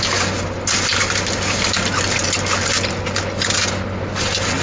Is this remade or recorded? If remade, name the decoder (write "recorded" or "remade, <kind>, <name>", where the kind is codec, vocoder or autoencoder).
recorded